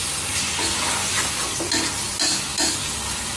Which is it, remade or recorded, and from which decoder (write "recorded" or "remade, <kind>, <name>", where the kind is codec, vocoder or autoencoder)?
recorded